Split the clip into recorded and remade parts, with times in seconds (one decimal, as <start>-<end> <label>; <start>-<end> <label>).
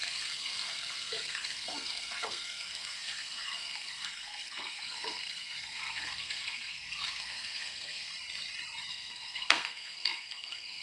0.0-8.1 remade; 8.1-8.9 recorded; 8.9-10.8 remade